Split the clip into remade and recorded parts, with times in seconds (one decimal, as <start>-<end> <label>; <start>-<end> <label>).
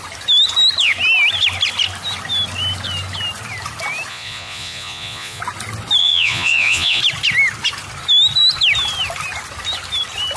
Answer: 0.0-4.1 recorded; 4.1-5.4 remade; 5.4-6.0 recorded; 6.0-7.0 remade; 7.0-10.4 recorded